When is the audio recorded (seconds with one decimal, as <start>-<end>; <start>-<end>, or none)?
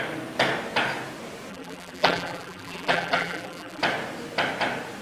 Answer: 0.0-1.5; 3.8-5.0